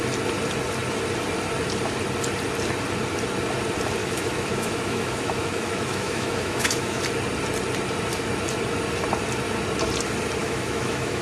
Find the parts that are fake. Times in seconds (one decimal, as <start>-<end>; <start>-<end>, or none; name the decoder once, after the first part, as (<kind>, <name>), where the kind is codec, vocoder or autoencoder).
4.0-7.0 (autoencoder, DAC-VAE); 10.4-11.2